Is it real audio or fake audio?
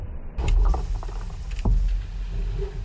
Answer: real